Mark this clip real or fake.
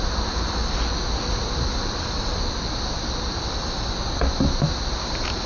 real